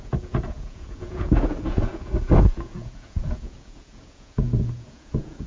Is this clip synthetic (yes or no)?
yes